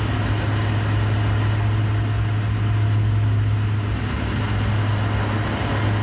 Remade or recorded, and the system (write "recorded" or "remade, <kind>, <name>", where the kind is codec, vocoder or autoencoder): recorded